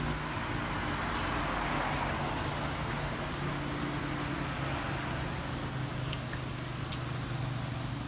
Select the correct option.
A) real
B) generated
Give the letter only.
A